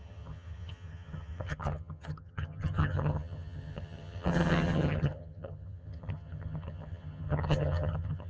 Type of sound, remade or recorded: remade